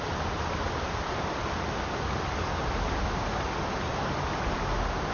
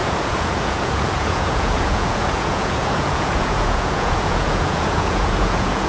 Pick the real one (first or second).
first